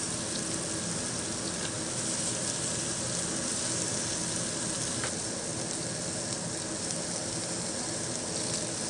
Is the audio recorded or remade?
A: recorded